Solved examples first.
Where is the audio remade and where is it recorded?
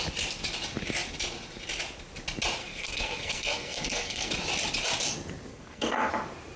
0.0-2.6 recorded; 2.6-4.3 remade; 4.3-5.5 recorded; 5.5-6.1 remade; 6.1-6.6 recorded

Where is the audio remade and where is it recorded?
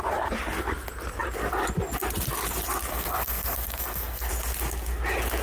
0.0-2.9 recorded; 2.9-4.3 remade; 4.3-5.4 recorded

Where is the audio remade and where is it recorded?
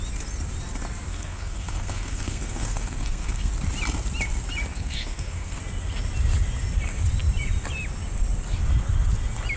0.0-1.1 recorded; 1.1-3.5 remade; 3.5-4.7 recorded; 4.7-5.6 remade; 5.6-9.6 recorded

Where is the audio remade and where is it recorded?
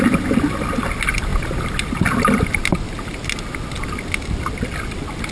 0.0-5.3 recorded